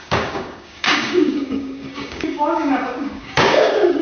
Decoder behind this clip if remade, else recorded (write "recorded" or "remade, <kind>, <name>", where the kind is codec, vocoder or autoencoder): remade, codec, DAC